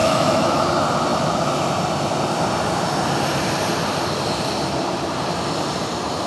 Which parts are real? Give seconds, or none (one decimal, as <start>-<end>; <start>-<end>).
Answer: 0.6-6.3